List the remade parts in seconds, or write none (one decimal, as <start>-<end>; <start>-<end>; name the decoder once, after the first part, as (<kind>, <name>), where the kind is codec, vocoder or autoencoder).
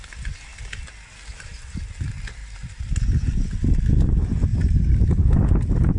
2.4-3.0 (vocoder, BigVGAN v2); 4.5-5.1